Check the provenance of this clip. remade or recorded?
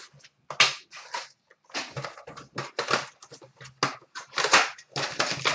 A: recorded